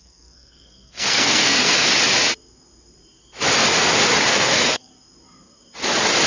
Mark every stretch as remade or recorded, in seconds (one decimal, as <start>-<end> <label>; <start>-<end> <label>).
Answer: 0.0-1.9 remade; 1.9-4.3 recorded; 4.3-4.9 remade; 4.9-6.3 recorded